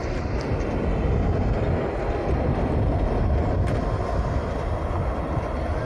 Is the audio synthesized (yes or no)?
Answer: no